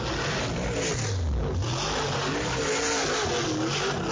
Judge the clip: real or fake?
real